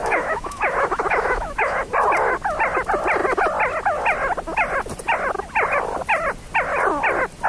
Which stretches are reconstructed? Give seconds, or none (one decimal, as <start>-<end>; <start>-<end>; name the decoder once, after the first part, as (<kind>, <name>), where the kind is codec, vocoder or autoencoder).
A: 0.0-1.9 (autoencoder, DAC-VAE)